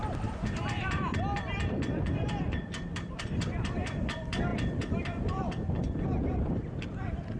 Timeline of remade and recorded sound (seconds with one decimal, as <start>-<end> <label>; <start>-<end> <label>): 0.0-4.5 remade; 4.5-6.5 recorded; 6.5-7.4 remade